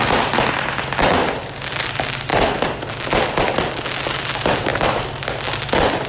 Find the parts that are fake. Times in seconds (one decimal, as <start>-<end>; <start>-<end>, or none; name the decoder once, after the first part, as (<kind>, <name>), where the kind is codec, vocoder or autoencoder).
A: none